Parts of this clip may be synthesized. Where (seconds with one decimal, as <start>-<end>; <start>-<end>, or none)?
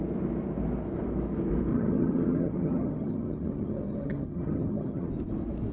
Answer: 1.7-5.1